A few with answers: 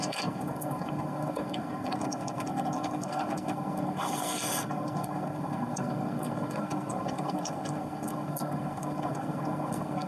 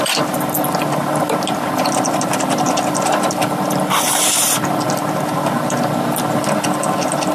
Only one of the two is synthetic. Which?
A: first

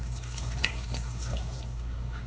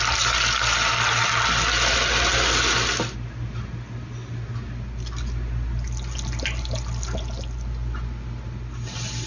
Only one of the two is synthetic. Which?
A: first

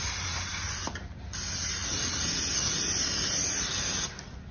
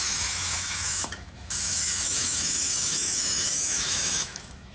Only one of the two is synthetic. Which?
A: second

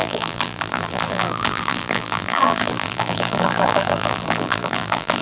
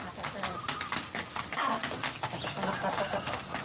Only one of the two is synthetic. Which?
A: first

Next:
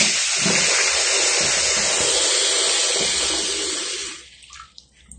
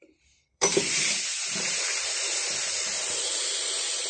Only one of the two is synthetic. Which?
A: second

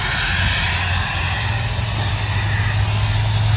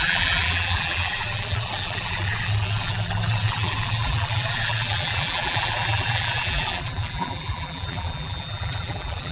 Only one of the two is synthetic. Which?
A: second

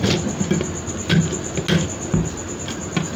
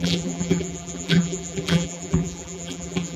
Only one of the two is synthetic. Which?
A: second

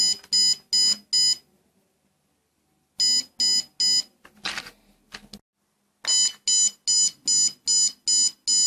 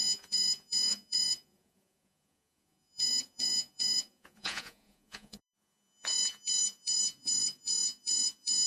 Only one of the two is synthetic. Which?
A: second